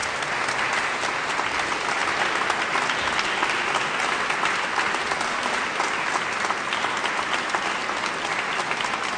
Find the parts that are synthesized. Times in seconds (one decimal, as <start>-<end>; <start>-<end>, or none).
none